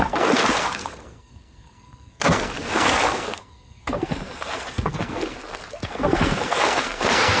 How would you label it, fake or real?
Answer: fake